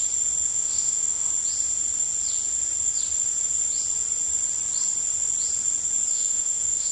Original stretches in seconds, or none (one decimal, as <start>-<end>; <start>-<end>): 0.0-0.5; 1.3-6.1